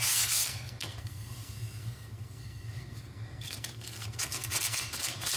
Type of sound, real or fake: fake